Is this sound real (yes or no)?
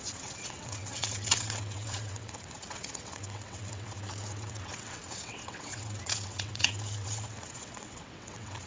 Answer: no